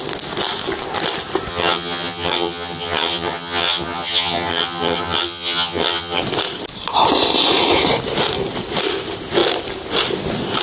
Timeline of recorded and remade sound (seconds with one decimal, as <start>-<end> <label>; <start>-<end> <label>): 0.0-1.5 recorded; 1.5-6.2 remade; 6.2-10.6 recorded